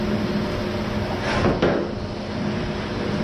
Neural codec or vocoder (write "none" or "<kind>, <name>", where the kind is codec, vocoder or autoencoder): none